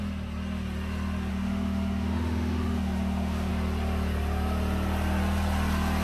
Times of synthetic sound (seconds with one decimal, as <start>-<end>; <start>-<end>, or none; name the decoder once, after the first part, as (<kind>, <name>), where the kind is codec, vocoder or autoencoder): 1.3-3.5 (autoencoder, DAC-VAE)